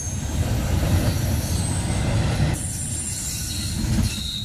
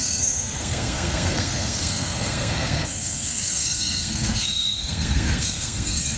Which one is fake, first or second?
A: second